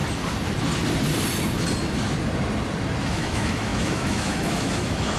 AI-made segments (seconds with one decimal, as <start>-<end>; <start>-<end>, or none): 3.1-5.2